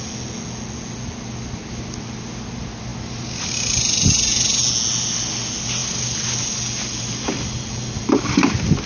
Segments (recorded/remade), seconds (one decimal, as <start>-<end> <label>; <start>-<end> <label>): 0.0-8.9 recorded